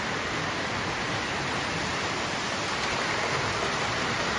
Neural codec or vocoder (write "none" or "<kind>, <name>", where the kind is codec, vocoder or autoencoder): none